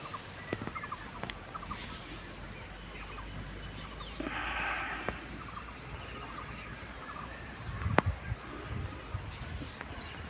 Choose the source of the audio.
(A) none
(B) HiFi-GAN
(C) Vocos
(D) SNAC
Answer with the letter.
A